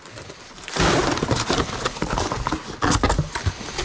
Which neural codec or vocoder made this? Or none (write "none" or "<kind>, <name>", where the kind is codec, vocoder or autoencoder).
none